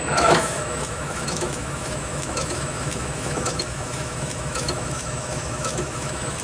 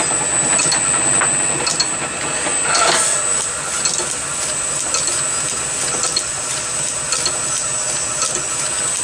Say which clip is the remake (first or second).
first